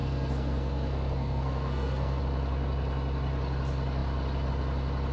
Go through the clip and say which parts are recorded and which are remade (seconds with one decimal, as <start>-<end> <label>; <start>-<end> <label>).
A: 0.0-2.2 remade; 2.2-5.1 recorded